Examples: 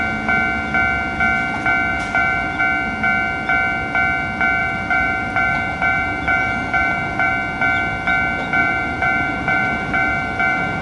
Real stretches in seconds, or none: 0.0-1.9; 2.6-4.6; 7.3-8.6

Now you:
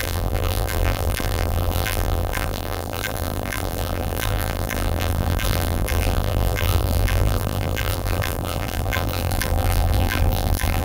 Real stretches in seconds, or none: none